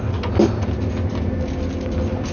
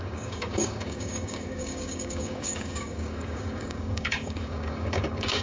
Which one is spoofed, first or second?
second